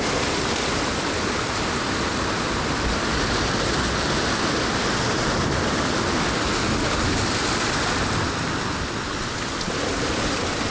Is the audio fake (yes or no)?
no